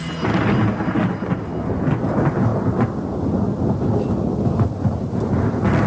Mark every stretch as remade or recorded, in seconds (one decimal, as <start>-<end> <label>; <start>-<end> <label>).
0.0-5.9 recorded